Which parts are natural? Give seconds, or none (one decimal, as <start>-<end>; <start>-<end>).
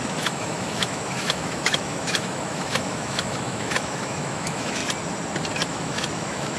4.8-5.7